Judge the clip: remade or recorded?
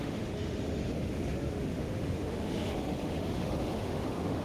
remade